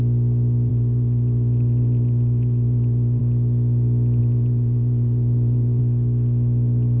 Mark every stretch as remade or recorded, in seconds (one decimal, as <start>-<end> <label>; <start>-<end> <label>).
0.0-0.7 recorded; 0.7-3.2 remade; 3.2-4.2 recorded; 4.2-5.8 remade; 5.8-7.0 recorded